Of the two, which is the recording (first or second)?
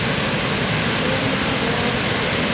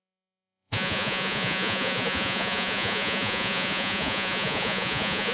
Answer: first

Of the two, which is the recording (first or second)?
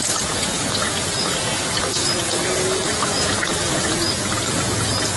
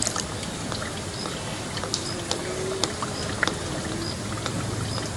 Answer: second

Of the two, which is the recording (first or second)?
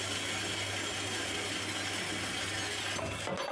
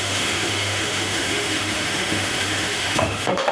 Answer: first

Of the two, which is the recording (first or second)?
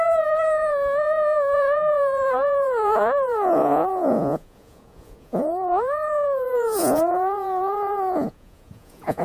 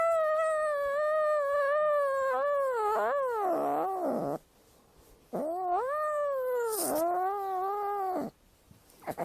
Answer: second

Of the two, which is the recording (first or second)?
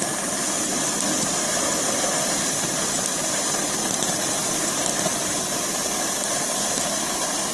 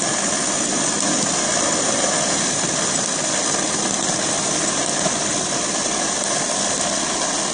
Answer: second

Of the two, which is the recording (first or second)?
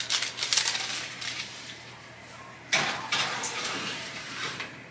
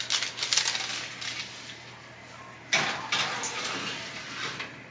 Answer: second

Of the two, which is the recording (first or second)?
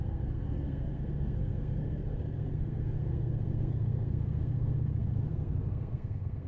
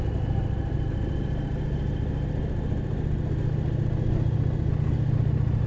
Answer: second